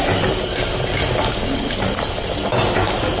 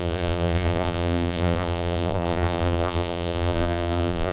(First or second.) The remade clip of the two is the second